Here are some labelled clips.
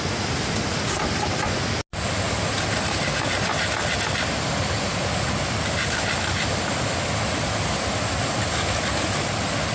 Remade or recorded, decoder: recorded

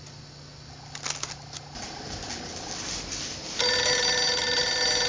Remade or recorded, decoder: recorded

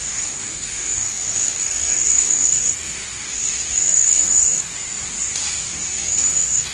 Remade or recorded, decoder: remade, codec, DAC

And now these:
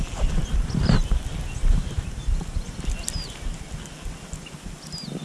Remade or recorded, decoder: recorded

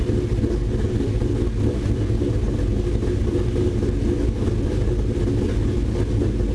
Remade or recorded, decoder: recorded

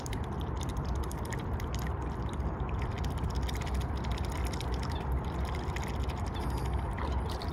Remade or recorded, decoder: remade, vocoder, BigVGAN v2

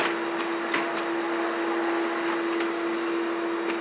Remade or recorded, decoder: recorded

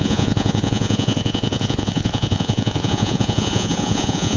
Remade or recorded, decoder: remade, vocoder, Vocos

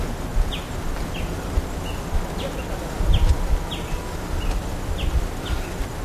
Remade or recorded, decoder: recorded